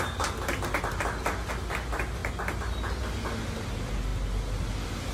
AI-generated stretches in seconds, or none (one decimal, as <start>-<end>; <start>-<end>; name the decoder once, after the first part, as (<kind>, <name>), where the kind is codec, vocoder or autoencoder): none